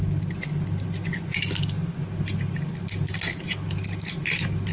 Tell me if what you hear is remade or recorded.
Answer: recorded